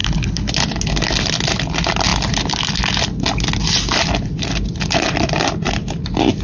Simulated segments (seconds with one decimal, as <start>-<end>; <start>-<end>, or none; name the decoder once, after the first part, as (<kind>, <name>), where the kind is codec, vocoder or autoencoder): 0.0-0.5 (codec, HILCodec)